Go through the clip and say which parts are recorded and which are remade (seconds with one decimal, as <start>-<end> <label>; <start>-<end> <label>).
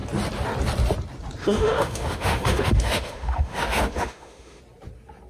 0.0-1.4 recorded; 1.4-4.6 remade; 4.6-5.3 recorded